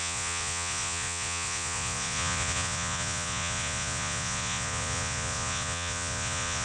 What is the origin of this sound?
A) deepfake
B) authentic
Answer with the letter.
A